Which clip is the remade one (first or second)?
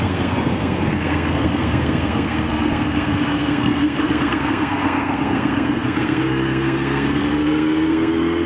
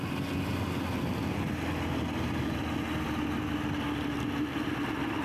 first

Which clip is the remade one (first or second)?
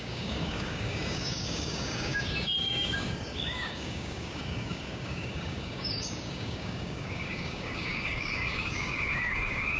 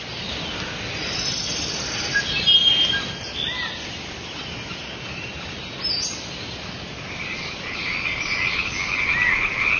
first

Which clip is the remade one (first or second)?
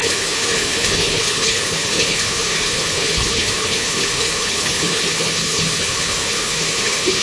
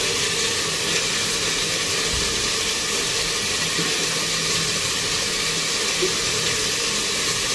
first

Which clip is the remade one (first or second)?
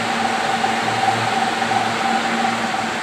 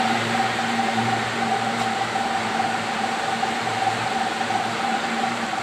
second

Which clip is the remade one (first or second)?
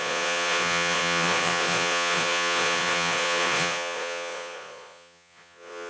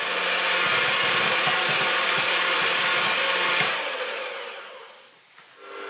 first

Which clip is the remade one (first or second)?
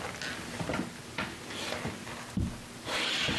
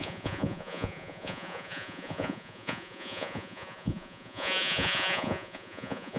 second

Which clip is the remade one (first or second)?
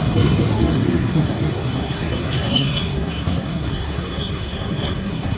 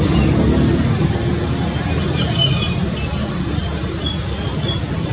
first